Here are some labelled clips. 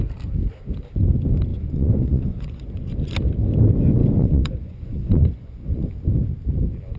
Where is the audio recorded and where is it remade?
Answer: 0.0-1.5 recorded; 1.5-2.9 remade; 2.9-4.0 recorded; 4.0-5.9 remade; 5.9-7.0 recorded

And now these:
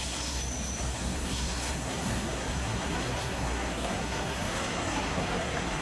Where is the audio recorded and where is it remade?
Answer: 0.0-0.4 remade; 0.4-0.9 recorded; 0.9-5.8 remade

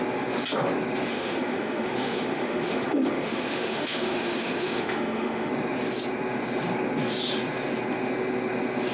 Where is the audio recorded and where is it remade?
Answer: 0.0-1.1 recorded; 1.1-5.5 remade; 5.5-8.9 recorded

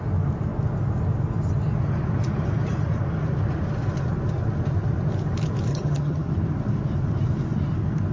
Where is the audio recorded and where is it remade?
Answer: 0.0-5.7 recorded; 5.7-6.3 remade; 6.3-8.1 recorded